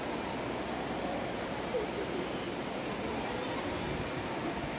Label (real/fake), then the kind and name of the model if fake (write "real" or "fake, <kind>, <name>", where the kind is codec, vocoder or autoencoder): real